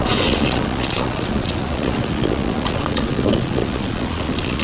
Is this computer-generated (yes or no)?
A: yes